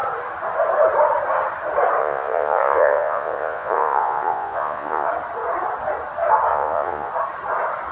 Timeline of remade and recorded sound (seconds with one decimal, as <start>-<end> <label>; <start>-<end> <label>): 0.0-2.0 recorded; 2.0-5.1 remade; 5.1-6.5 recorded; 6.5-7.1 remade; 7.1-7.9 recorded